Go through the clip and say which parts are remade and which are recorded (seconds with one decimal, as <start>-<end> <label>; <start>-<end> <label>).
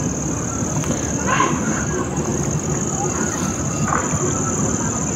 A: 0.0-1.3 recorded; 1.3-1.8 remade; 1.8-5.2 recorded